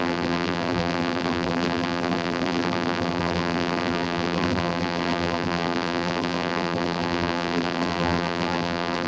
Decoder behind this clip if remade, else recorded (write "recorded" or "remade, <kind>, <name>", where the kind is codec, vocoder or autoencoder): remade, vocoder, BigVGAN v2